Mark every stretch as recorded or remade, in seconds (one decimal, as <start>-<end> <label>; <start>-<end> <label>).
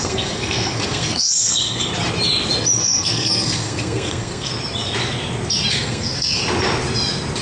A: 0.0-1.9 remade; 1.9-2.8 recorded; 2.8-4.5 remade; 4.5-5.7 recorded; 5.7-6.4 remade; 6.4-7.4 recorded